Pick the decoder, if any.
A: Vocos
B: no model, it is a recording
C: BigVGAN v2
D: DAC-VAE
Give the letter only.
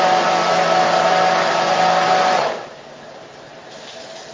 B